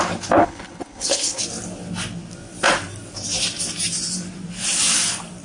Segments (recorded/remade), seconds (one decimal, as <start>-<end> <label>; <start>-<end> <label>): 0.0-0.4 recorded; 0.4-1.4 remade; 1.4-5.4 recorded